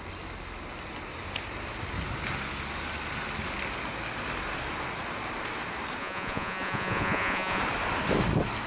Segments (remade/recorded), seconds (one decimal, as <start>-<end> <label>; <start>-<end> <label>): 0.0-6.0 recorded; 6.0-7.6 remade; 7.6-8.7 recorded